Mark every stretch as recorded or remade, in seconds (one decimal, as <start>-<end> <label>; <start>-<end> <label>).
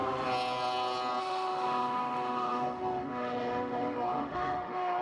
0.0-1.2 recorded; 1.2-5.0 remade